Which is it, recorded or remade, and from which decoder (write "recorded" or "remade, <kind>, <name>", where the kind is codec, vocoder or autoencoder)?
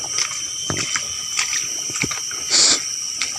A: recorded